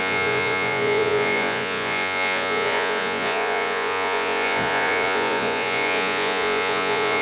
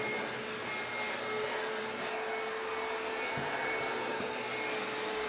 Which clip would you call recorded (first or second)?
second